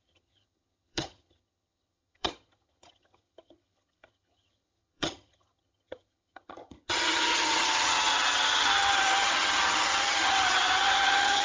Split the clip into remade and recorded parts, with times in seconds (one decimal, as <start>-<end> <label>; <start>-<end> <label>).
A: 0.0-11.4 remade

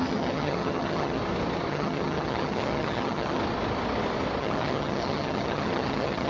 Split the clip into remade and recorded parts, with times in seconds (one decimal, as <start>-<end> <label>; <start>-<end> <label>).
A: 0.0-1.2 remade; 1.2-1.7 recorded; 1.7-3.4 remade; 3.4-4.4 recorded; 4.4-6.3 remade

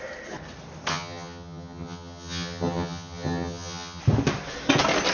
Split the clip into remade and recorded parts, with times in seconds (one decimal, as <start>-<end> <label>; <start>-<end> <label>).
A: 0.0-0.9 recorded; 0.9-4.0 remade; 4.0-5.1 recorded

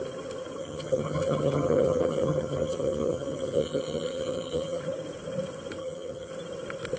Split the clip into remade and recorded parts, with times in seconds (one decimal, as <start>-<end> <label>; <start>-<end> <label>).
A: 0.0-0.6 recorded; 0.6-4.8 remade; 4.8-5.8 recorded; 5.8-6.3 remade; 6.3-7.0 recorded

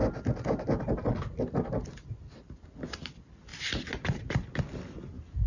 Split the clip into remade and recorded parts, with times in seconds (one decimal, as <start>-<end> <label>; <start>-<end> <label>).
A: 0.0-5.5 recorded

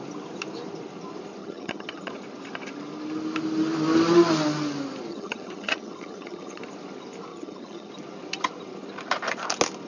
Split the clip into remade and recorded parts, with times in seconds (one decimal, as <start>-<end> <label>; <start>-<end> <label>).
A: 0.0-1.4 recorded; 1.4-2.1 remade; 2.1-5.1 recorded; 5.1-6.6 remade; 6.6-7.3 recorded; 7.3-7.9 remade; 7.9-9.9 recorded

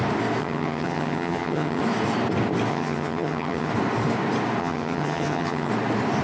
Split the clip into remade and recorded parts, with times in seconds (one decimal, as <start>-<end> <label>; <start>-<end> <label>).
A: 0.0-0.4 recorded; 0.4-1.8 remade; 1.8-2.7 recorded; 2.7-3.7 remade; 3.7-4.6 recorded; 4.6-5.7 remade; 5.7-6.2 recorded